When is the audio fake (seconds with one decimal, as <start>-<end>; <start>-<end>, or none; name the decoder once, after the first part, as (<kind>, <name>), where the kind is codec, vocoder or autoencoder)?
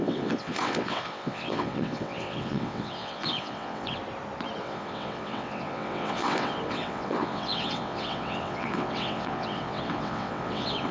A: 0.0-4.0 (vocoder, WaveNeXt); 4.6-10.9